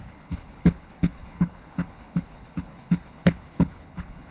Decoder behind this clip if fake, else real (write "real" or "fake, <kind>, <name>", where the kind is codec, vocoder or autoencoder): fake, codec, HILCodec